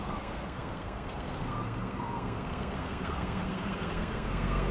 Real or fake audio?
fake